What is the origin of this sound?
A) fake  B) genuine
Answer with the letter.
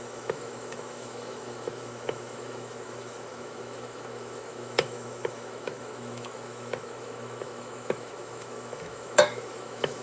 A